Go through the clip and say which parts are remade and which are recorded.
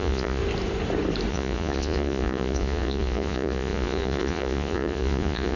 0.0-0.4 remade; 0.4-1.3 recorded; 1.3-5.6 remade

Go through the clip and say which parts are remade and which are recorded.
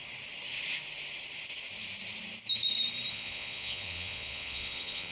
0.0-3.1 recorded; 3.1-5.1 remade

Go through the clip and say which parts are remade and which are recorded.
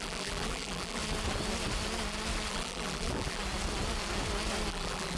0.0-1.0 remade; 1.0-2.5 recorded; 2.5-3.4 remade; 3.4-4.7 recorded; 4.7-5.2 remade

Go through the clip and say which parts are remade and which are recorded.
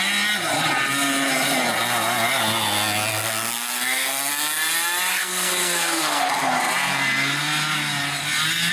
0.0-3.1 recorded; 3.1-4.3 remade; 4.3-5.1 recorded; 5.1-6.2 remade; 6.2-8.7 recorded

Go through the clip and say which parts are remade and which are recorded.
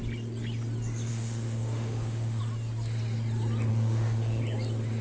0.0-1.1 recorded; 1.1-2.4 remade; 2.4-3.7 recorded; 3.7-4.4 remade; 4.4-5.0 recorded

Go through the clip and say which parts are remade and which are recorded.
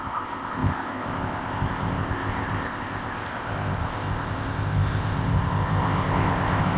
0.0-6.8 remade